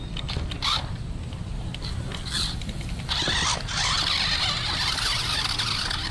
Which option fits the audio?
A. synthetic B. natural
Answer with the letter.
B